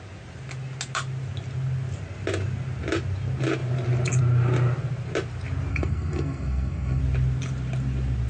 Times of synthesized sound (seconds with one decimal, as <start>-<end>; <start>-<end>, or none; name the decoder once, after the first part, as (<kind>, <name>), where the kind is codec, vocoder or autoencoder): 5.7-7.0 (codec, SNAC)